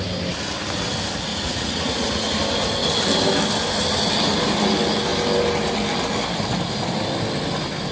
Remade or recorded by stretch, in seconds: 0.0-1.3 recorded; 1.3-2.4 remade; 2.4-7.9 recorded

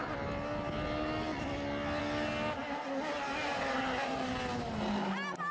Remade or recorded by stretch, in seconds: 0.0-5.5 recorded

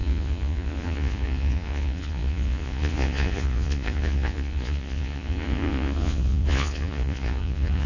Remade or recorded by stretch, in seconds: 0.0-7.9 remade

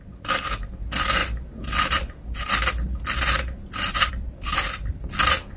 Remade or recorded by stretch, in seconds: 0.0-5.6 recorded

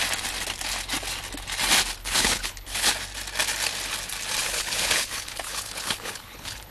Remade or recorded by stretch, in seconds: 0.0-2.0 recorded; 2.0-2.9 remade; 2.9-4.4 recorded; 4.4-6.7 remade